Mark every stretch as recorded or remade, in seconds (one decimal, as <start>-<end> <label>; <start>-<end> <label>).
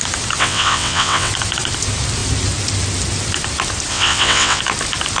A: 0.0-0.4 recorded; 0.4-1.3 remade; 1.3-3.9 recorded; 3.9-4.6 remade; 4.6-5.2 recorded